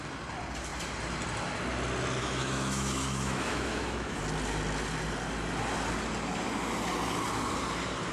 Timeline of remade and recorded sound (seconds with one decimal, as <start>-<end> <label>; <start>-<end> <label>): 0.0-2.2 recorded; 2.2-4.2 remade; 4.2-8.1 recorded